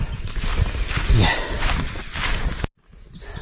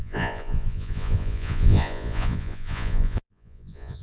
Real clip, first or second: first